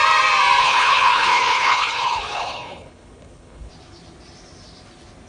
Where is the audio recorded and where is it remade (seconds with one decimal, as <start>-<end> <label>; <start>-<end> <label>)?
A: 0.0-0.6 recorded; 0.6-3.7 remade; 3.7-5.3 recorded

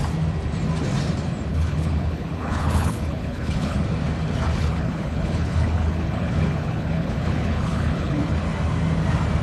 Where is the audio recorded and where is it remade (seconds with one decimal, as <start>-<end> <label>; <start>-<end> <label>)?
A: 0.0-1.5 recorded; 1.5-3.8 remade; 3.8-4.6 recorded; 4.6-8.2 remade; 8.2-9.4 recorded

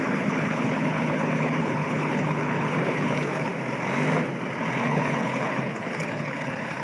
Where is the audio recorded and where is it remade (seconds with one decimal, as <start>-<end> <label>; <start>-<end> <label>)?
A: 0.0-3.5 remade; 3.5-4.8 recorded; 4.8-6.8 remade

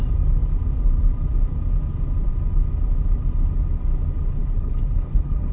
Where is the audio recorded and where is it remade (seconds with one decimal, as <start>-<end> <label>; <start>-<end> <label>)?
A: 0.0-4.4 recorded; 4.4-5.5 remade

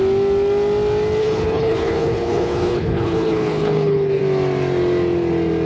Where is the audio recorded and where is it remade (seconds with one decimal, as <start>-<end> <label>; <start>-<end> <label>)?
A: 0.0-1.2 recorded; 1.2-4.2 remade; 4.2-5.7 recorded